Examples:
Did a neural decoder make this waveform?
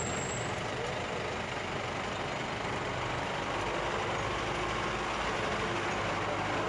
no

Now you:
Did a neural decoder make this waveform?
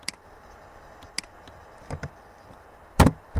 yes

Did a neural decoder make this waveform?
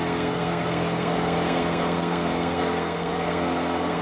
yes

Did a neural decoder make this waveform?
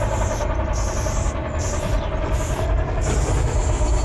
no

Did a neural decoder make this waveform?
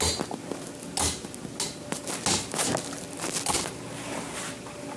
no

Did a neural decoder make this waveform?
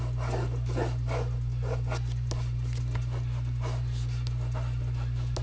no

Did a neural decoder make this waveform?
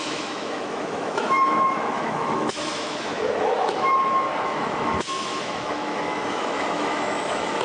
yes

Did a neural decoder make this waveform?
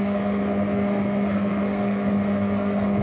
yes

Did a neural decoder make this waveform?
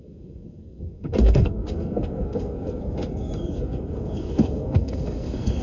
yes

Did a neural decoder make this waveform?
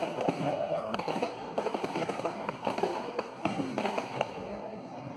yes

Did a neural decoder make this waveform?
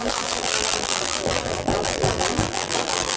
yes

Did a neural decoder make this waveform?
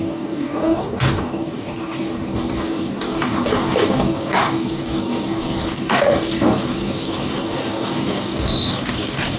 yes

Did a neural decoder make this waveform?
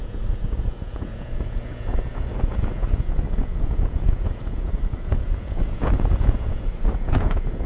yes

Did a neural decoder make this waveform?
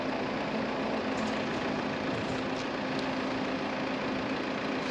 no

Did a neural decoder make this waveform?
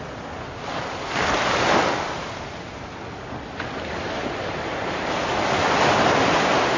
no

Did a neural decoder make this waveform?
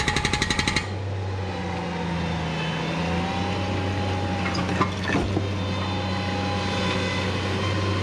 no